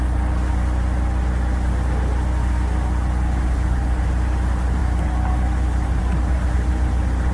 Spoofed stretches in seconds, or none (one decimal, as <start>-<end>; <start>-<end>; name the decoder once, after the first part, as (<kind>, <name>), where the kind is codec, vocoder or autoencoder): none